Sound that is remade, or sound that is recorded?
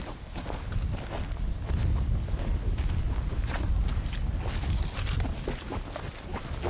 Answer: recorded